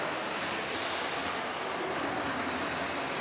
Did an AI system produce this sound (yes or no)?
no